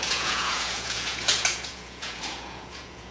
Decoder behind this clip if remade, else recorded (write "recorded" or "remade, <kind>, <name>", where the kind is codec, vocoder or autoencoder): remade, vocoder, Vocos